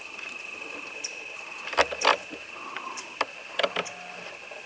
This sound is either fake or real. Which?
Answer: real